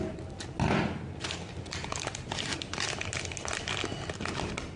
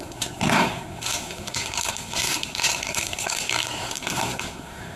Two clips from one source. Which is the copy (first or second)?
second